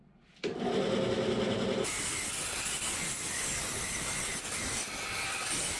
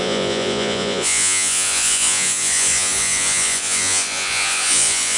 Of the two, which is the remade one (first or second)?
second